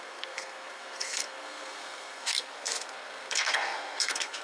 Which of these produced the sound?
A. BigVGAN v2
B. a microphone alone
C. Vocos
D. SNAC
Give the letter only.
D